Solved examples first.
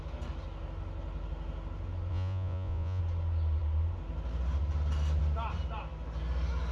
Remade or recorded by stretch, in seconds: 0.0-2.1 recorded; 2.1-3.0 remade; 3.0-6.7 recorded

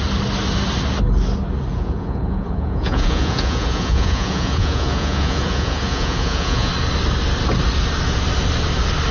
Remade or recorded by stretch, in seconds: 0.0-1.7 recorded; 1.7-6.7 remade; 6.7-9.1 recorded

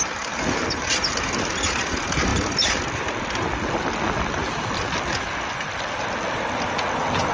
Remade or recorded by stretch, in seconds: 0.0-7.3 recorded

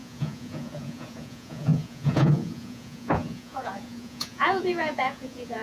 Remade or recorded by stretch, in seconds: 0.0-5.6 remade

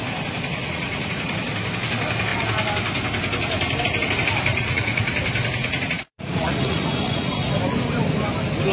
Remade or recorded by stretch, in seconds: 0.0-0.6 recorded; 0.6-1.3 remade; 1.3-4.5 recorded; 4.5-5.1 remade; 5.1-5.6 recorded; 5.6-7.5 remade; 7.5-8.7 recorded

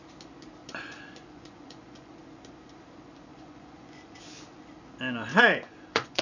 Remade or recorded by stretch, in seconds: 0.0-0.6 recorded; 0.6-2.1 remade; 2.1-3.3 recorded; 3.3-4.2 remade; 4.2-5.3 recorded; 5.3-6.2 remade